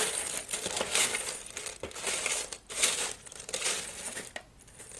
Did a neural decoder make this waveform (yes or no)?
no